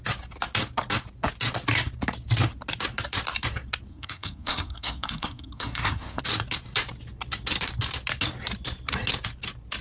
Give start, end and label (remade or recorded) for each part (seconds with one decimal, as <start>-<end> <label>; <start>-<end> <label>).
0.0-3.9 recorded; 3.9-6.2 remade; 6.2-9.8 recorded